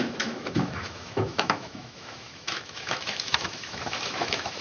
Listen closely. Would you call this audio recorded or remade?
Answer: remade